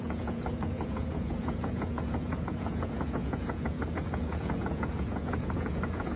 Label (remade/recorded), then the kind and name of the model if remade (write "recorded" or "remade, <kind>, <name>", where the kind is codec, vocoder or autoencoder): remade, vocoder, Vocos